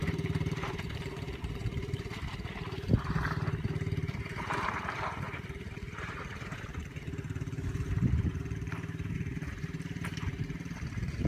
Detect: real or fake fake